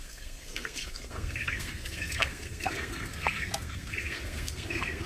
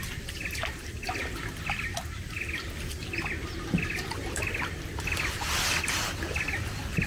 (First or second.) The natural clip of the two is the second